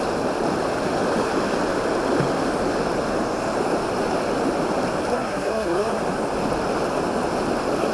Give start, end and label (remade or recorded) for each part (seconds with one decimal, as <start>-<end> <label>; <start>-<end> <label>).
0.0-5.1 recorded; 5.1-6.0 remade; 6.0-7.9 recorded